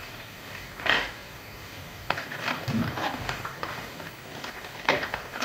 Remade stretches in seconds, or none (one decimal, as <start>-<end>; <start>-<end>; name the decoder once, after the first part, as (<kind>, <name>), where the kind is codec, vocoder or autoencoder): 0.0-5.4 (codec, DAC)